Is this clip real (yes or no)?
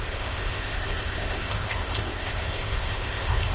no